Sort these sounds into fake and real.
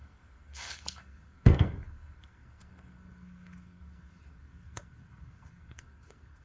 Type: fake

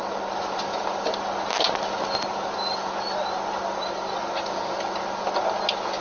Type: real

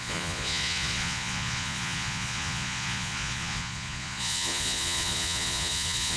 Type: fake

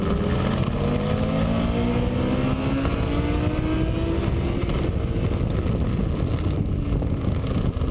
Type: real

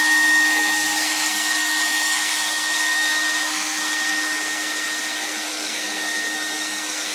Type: fake